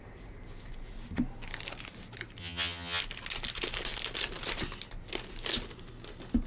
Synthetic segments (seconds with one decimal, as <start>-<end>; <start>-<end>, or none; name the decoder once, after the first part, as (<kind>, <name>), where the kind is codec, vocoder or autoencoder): 2.4-3.0 (vocoder, HiFi-GAN)